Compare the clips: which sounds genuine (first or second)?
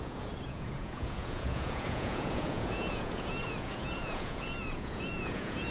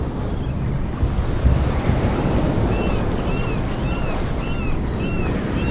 second